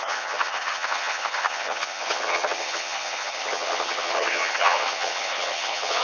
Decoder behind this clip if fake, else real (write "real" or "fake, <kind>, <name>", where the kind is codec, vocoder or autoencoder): fake, vocoder, HiFi-GAN